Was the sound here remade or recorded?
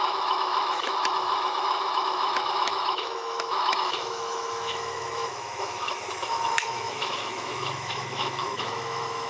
remade